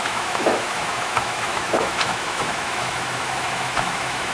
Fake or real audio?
fake